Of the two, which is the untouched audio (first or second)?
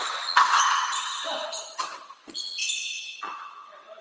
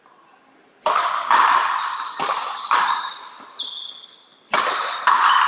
second